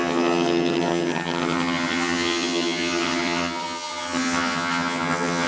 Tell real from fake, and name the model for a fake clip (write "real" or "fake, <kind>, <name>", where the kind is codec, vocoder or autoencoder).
fake, vocoder, HiFi-GAN